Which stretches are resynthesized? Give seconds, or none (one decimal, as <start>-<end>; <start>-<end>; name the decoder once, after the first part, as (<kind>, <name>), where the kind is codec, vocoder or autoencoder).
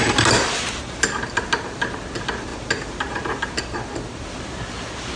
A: none